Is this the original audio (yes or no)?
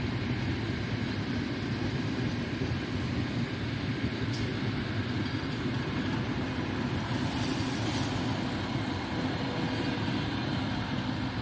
yes